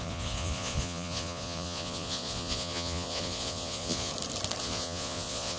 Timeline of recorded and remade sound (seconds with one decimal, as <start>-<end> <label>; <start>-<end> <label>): 0.0-4.1 remade; 4.1-4.6 recorded; 4.6-5.6 remade